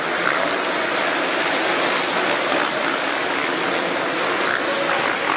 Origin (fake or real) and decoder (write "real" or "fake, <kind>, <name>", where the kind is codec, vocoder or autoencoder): real